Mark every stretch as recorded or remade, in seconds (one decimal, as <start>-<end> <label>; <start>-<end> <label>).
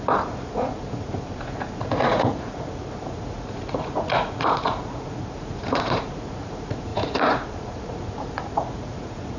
0.0-9.4 remade